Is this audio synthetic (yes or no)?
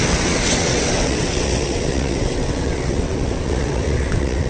yes